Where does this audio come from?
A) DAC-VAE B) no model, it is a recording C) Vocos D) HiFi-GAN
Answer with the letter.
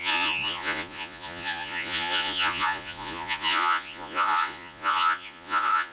C